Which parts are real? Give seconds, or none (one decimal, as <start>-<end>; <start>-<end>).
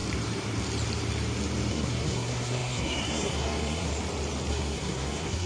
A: 0.0-1.7; 3.9-4.5